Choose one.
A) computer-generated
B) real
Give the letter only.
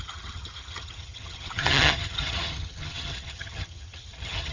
A